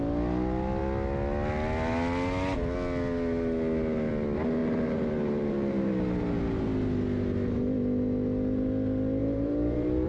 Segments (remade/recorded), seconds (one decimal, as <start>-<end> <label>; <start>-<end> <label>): 0.0-4.6 recorded; 4.6-5.9 remade; 5.9-9.2 recorded; 9.2-10.1 remade